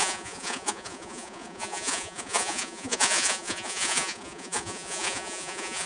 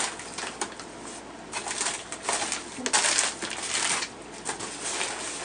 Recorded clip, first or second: second